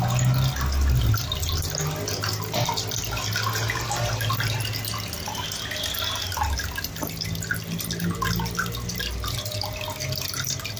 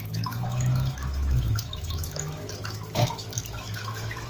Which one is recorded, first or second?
first